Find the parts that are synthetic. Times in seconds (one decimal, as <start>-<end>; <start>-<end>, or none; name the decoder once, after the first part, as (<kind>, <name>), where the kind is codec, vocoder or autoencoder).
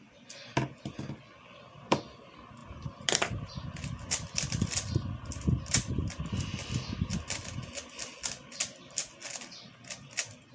none